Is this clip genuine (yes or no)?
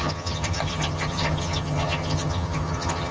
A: no